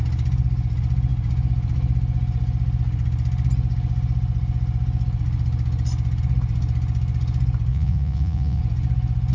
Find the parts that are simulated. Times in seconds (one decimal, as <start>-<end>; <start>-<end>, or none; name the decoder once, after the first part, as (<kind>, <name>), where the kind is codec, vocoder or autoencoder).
7.7-8.6 (vocoder, Vocos)